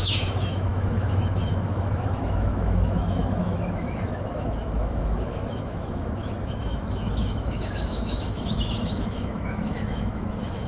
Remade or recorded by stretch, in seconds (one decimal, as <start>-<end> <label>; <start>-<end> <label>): 0.0-10.7 remade

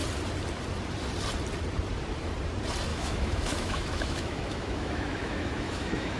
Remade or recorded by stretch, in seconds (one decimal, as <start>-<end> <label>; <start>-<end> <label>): 0.0-2.9 recorded; 2.9-6.2 remade

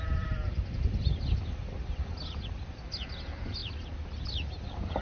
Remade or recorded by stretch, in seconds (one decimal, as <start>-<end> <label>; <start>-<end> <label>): 0.0-5.0 recorded

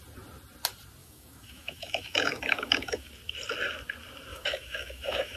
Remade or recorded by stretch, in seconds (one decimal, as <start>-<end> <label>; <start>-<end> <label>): 0.0-1.0 recorded; 1.0-3.1 remade; 3.1-4.3 recorded; 4.3-5.4 remade

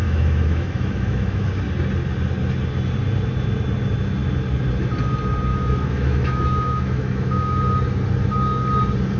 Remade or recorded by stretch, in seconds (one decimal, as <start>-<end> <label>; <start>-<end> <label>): 0.0-1.5 remade; 1.5-5.5 recorded; 5.5-7.6 remade; 7.6-9.2 recorded

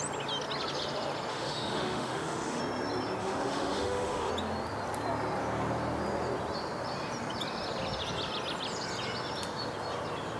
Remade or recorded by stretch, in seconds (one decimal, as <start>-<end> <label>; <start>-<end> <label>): 0.0-1.3 recorded; 1.3-2.6 remade; 2.6-3.2 recorded; 3.2-4.3 remade; 4.3-10.4 recorded

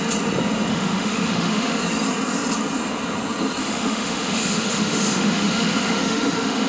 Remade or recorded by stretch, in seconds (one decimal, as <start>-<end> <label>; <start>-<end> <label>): 0.0-0.7 recorded; 0.7-1.8 remade; 1.8-3.6 recorded; 3.6-6.7 remade